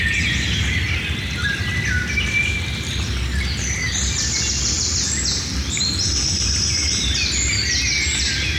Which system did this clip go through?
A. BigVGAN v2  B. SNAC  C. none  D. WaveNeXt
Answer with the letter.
C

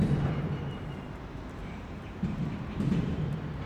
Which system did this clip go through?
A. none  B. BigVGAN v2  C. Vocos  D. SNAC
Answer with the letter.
B